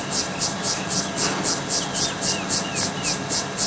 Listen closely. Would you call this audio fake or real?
real